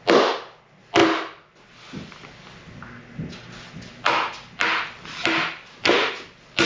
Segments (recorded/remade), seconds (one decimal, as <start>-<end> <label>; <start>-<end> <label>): 0.0-6.7 recorded